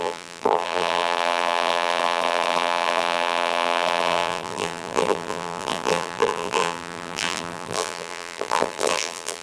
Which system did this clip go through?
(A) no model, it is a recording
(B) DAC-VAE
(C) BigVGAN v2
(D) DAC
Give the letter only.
C